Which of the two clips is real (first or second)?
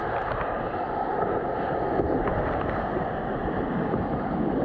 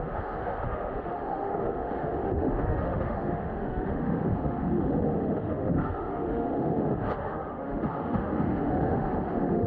first